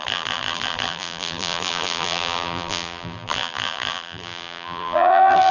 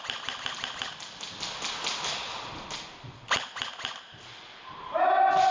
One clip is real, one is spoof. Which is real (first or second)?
second